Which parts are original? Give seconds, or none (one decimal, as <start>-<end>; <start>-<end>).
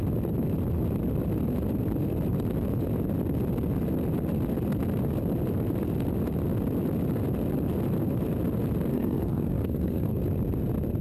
0.0-8.9; 10.2-11.0